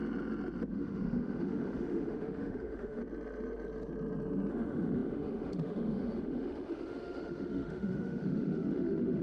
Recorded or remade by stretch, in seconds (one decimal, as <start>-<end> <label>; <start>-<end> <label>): 0.0-0.6 recorded; 0.6-3.0 remade; 3.0-4.5 recorded; 4.5-9.2 remade